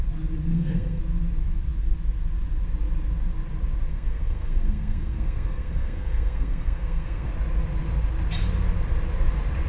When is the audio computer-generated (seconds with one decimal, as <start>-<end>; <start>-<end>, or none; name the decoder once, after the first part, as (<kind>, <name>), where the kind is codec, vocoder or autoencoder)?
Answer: 0.5-1.0 (codec, SNAC); 3.9-7.3